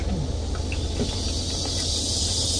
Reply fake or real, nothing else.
real